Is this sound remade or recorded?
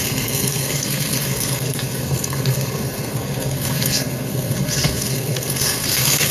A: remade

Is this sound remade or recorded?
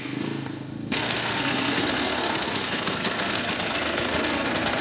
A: remade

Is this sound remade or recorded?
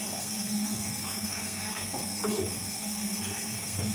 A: remade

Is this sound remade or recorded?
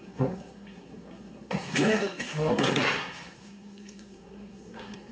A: remade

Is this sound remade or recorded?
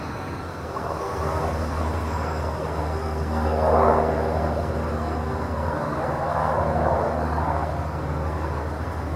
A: remade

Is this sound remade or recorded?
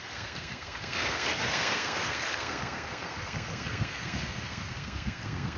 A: remade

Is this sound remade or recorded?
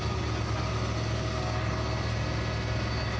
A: recorded